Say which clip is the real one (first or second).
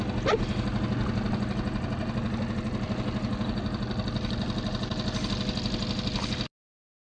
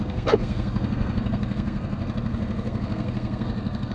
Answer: first